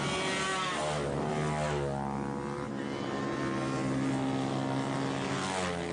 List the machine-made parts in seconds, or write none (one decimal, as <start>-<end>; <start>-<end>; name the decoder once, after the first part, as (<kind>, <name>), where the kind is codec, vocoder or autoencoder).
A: none